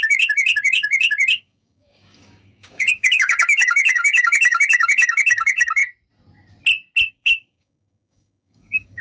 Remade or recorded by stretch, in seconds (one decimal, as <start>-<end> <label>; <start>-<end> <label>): 0.0-5.8 remade; 5.8-7.1 recorded; 7.1-9.0 remade

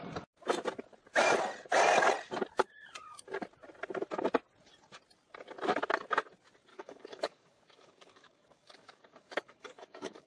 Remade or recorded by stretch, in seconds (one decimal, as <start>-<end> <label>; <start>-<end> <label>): 0.0-6.7 recorded; 6.7-10.3 remade

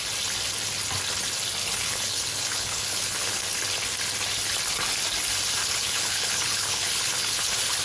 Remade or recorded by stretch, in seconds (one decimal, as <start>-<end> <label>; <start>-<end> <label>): 0.0-1.6 recorded; 1.6-3.4 remade; 3.4-5.6 recorded; 5.6-7.8 remade